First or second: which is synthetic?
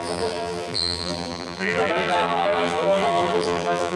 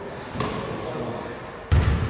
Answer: first